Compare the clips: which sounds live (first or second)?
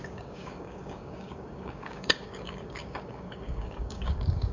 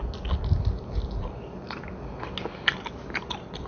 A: second